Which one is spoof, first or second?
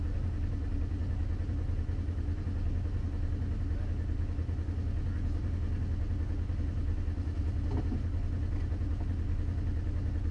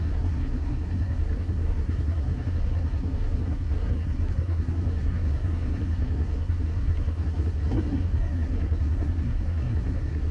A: second